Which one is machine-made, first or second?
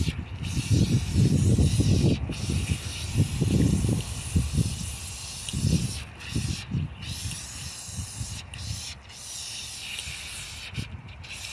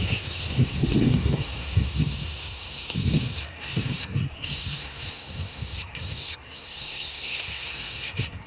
second